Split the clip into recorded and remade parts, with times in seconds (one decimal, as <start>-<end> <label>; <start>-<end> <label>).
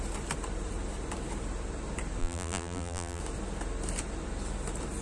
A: 0.0-2.2 recorded; 2.2-3.2 remade; 3.2-5.0 recorded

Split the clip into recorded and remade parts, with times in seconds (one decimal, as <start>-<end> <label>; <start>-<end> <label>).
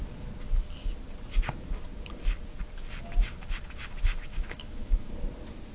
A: 0.0-4.3 recorded; 4.3-5.1 remade; 5.1-5.7 recorded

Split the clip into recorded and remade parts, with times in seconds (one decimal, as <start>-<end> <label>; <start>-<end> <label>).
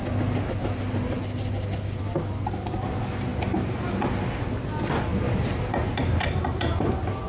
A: 0.0-5.1 recorded; 5.1-6.8 remade; 6.8-7.3 recorded